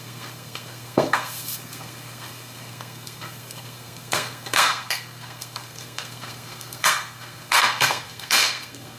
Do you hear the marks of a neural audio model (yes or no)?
yes